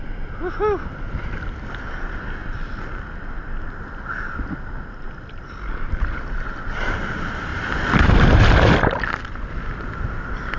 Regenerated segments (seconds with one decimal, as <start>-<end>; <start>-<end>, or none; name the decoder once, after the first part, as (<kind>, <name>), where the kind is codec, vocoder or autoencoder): none